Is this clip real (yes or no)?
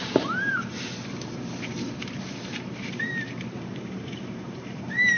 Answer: no